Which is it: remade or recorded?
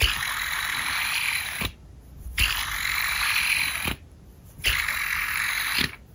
recorded